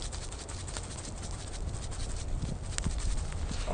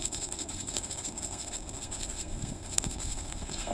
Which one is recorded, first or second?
first